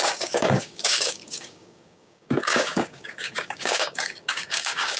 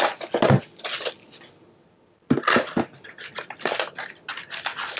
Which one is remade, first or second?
first